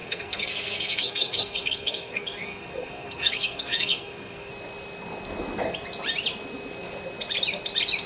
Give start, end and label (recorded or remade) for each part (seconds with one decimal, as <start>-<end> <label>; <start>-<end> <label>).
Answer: 0.0-4.5 remade; 4.5-8.1 recorded